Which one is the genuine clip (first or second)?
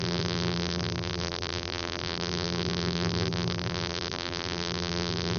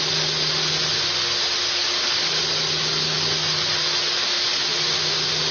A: second